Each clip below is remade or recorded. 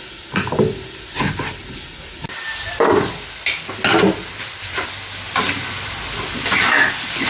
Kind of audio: recorded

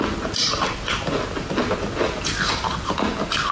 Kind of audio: recorded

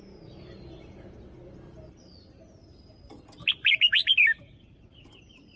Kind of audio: recorded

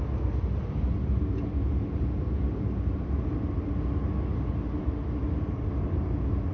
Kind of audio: recorded